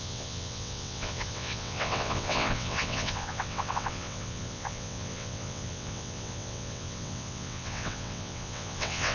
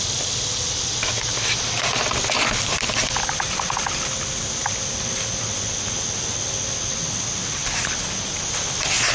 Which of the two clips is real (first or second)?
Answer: second